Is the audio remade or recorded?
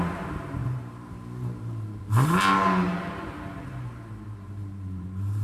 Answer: remade